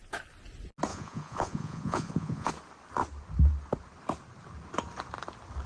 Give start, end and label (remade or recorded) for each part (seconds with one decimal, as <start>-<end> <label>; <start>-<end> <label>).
0.0-0.9 recorded; 0.9-2.5 remade; 2.5-5.7 recorded